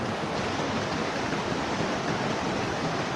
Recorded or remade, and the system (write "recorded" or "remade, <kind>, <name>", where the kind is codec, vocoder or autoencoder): recorded